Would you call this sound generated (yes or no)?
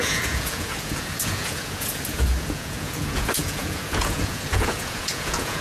yes